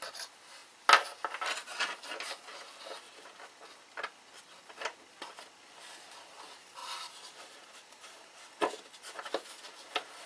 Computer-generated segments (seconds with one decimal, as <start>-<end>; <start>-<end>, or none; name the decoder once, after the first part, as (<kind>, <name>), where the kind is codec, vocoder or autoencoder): 6.8-8.5 (vocoder, BigVGAN v2)